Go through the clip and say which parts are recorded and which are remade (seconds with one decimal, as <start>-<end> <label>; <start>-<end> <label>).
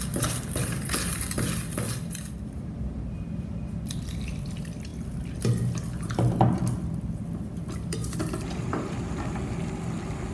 0.0-10.3 recorded